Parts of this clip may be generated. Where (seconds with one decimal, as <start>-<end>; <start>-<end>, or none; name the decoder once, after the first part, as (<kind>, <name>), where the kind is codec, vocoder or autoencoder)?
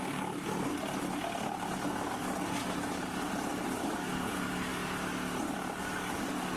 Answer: 0.0-0.7 (codec, DAC); 2.1-2.6; 3.8-4.7; 5.8-6.6